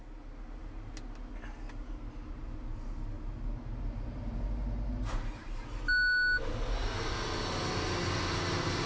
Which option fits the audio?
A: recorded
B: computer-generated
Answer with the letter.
A